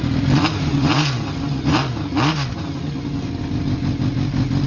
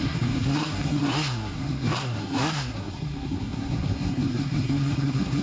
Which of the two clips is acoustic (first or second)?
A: first